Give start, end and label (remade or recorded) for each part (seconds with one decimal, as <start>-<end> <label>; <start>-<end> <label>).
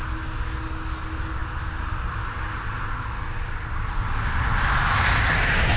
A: 0.0-5.8 recorded